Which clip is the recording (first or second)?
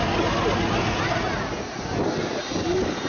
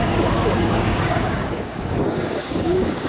first